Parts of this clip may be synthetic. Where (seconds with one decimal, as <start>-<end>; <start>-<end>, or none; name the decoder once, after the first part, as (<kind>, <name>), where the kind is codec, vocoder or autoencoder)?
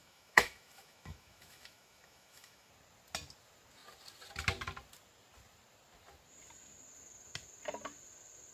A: 0.0-2.7 (autoencoder, DAC-VAE)